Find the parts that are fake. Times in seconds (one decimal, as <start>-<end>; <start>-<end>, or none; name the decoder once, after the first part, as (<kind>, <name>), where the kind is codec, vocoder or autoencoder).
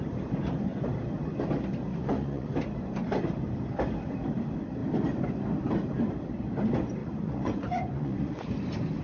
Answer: 1.9-2.5 (vocoder, Vocos); 7.0-8.3